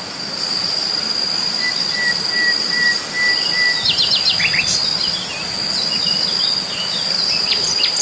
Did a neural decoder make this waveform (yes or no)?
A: no